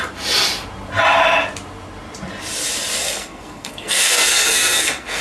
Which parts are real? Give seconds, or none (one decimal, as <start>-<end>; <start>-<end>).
0.0-3.0